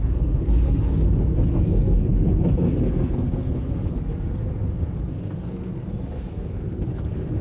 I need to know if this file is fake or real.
fake